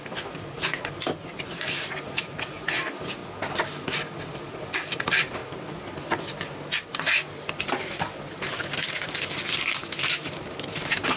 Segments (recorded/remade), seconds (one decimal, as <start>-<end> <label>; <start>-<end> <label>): 0.0-3.2 remade; 3.2-4.5 recorded; 4.5-5.4 remade; 5.4-10.1 recorded; 10.1-11.2 remade